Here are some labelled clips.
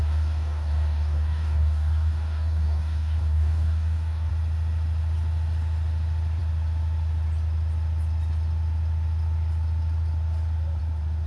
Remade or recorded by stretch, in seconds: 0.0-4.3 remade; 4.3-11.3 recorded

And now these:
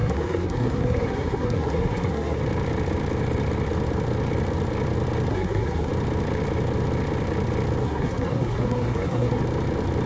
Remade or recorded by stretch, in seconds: 0.0-2.4 remade; 2.4-5.3 recorded; 5.3-5.9 remade; 5.9-7.8 recorded; 7.8-9.4 remade; 9.4-10.1 recorded